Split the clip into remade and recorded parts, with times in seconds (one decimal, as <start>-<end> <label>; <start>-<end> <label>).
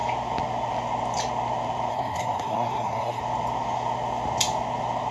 0.0-1.9 recorded; 1.9-3.2 remade; 3.2-5.1 recorded